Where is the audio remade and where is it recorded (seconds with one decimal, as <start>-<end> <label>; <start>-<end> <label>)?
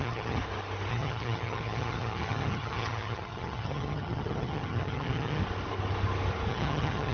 0.0-0.4 remade; 0.4-0.9 recorded; 0.9-5.4 remade; 5.4-6.5 recorded; 6.5-7.1 remade